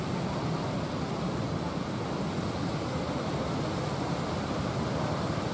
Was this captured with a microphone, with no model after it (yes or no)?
yes